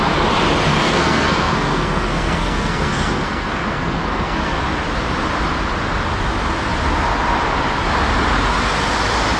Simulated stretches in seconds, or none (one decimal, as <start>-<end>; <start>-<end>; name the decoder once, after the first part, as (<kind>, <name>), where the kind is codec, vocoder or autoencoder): 0.7-4.6 (codec, SNAC)